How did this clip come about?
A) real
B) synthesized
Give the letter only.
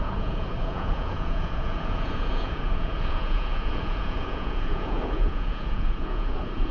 B